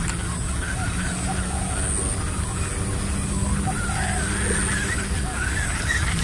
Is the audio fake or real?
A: real